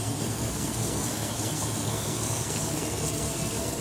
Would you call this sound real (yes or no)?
no